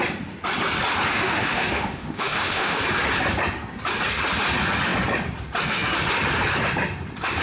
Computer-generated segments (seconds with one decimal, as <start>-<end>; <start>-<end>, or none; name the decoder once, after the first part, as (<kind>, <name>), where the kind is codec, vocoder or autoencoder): 1.1-2.8 (autoencoder, DAC-VAE)

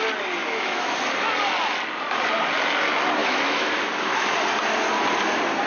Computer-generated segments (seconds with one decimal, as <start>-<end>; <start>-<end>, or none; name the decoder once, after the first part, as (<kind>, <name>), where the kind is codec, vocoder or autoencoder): 0.4-0.9 (autoencoder, DAC-VAE); 3.2-3.7